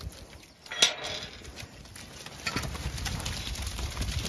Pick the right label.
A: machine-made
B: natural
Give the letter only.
B